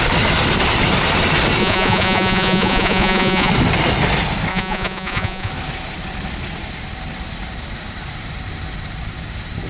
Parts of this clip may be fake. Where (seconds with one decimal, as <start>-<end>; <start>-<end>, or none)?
1.6-3.5; 4.5-5.5